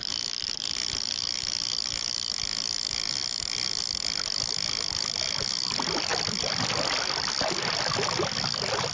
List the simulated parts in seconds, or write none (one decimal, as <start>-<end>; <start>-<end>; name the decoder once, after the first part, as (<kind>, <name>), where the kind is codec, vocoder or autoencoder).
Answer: none